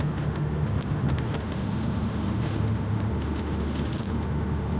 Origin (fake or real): fake